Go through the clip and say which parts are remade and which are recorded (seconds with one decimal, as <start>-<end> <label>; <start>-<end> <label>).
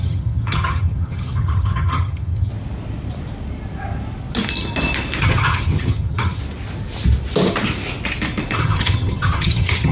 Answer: 0.0-2.5 remade; 2.5-5.2 recorded; 5.2-6.4 remade; 6.4-8.6 recorded; 8.6-9.9 remade